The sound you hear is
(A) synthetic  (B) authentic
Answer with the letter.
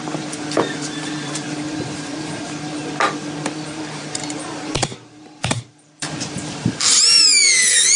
A